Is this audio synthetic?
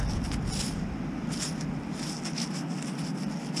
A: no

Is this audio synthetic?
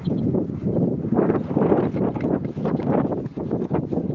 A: no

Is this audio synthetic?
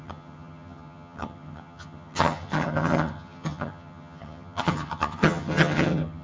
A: yes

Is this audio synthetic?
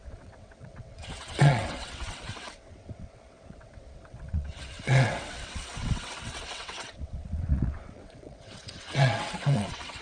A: yes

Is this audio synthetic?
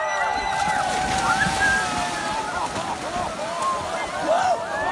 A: no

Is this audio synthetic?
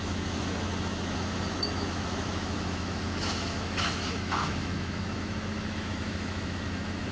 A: yes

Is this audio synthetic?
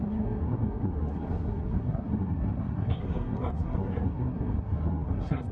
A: yes